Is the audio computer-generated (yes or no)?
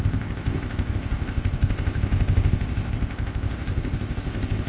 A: yes